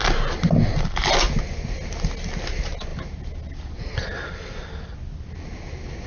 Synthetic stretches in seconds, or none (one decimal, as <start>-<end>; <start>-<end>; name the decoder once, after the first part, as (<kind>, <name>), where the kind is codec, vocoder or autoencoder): none